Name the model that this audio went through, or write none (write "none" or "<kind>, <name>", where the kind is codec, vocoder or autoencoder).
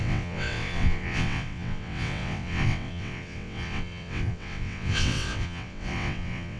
vocoder, WaveNeXt